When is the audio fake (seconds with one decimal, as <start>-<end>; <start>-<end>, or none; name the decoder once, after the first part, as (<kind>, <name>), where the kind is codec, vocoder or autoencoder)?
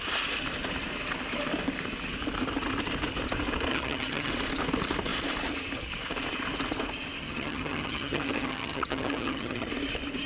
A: 3.7-4.3 (vocoder, HiFi-GAN); 7.2-9.7